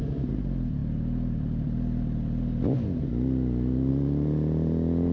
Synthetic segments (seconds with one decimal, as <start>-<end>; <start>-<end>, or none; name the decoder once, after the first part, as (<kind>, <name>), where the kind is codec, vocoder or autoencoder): none